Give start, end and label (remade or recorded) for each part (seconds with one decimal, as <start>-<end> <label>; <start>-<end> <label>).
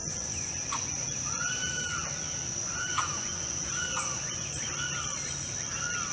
0.0-1.9 remade; 1.9-2.6 recorded; 2.6-4.6 remade; 4.6-6.1 recorded